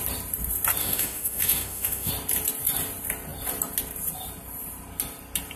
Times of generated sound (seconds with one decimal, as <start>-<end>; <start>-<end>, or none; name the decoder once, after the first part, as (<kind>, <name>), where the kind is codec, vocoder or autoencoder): 0.8-2.1 (autoencoder, DAC-VAE)